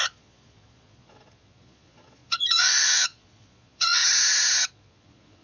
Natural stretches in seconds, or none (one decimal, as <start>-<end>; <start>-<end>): 4.0-4.7